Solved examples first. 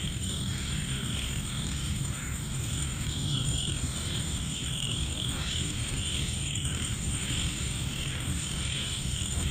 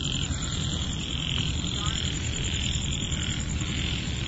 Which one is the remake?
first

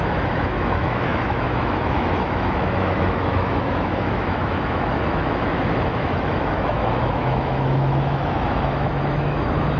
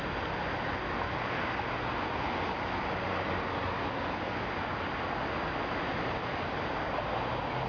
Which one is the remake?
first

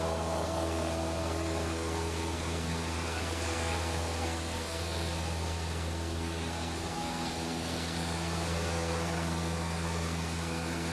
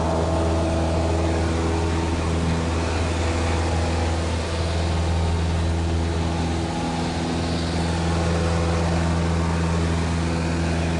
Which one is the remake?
first